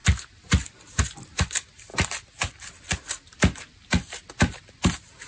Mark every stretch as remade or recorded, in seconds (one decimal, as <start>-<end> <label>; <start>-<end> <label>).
0.0-5.3 recorded